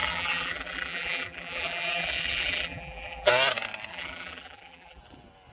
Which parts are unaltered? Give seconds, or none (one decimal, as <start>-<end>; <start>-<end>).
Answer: 3.3-3.9; 5.0-5.5